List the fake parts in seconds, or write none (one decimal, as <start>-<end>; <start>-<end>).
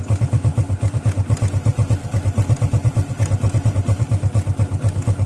none